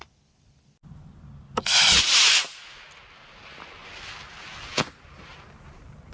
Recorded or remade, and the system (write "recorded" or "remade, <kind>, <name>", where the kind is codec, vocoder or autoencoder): recorded